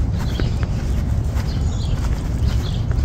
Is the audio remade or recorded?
recorded